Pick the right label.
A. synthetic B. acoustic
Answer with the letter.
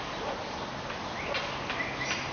B